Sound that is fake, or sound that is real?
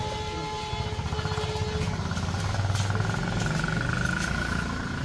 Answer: real